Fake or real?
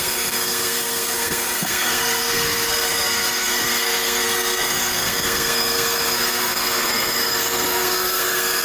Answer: fake